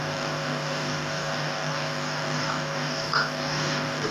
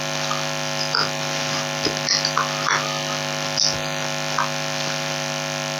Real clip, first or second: second